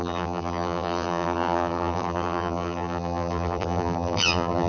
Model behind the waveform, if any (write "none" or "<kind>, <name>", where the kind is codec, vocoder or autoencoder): vocoder, BigVGAN v2